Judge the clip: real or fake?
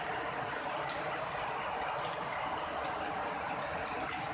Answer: real